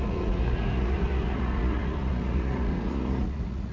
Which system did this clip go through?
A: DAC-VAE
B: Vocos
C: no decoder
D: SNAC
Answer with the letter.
B